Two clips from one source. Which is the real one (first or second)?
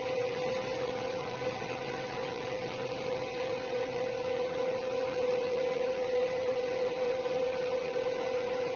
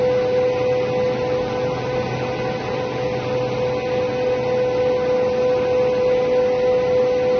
second